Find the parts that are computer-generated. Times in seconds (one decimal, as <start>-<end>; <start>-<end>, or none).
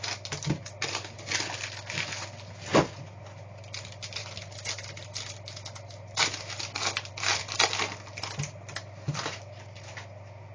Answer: none